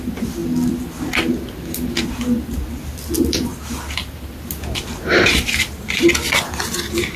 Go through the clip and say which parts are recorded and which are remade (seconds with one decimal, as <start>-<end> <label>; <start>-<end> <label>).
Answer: 0.0-7.2 recorded